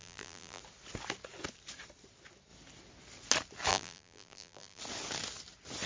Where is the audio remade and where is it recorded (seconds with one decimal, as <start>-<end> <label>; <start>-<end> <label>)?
0.0-0.6 remade; 0.6-3.7 recorded; 3.7-4.8 remade; 4.8-5.9 recorded